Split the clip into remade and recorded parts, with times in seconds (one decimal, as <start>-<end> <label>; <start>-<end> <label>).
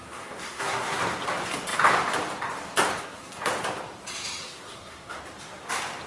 0.0-1.0 remade; 1.0-3.0 recorded; 3.0-3.5 remade; 3.5-4.4 recorded; 4.4-5.2 remade; 5.2-6.1 recorded